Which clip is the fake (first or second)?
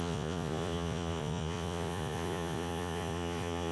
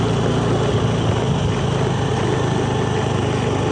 first